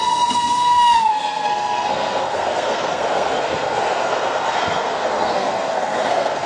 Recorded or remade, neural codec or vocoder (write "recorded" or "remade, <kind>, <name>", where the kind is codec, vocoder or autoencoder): remade, codec, SNAC